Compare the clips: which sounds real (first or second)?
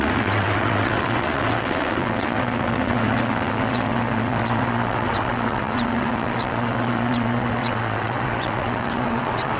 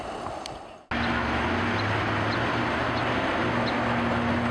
second